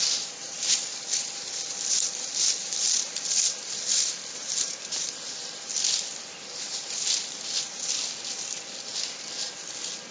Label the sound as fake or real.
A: fake